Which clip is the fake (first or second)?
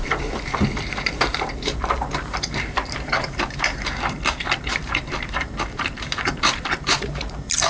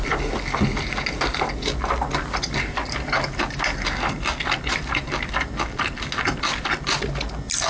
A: first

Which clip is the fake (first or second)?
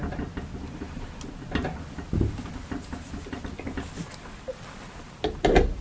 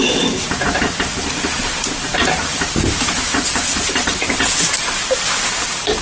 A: second